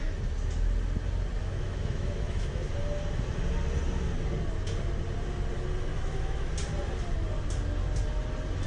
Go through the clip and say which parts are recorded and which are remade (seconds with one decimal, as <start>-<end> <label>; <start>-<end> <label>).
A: 0.0-1.4 recorded; 1.4-2.6 remade; 2.6-5.9 recorded; 5.9-6.5 remade; 6.5-8.7 recorded